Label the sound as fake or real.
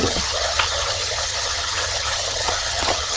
fake